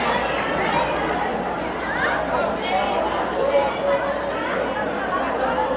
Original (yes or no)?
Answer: yes